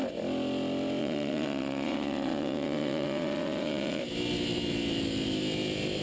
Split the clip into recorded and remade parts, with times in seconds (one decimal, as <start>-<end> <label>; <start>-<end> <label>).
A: 0.0-1.0 recorded; 1.0-4.0 remade; 4.0-6.0 recorded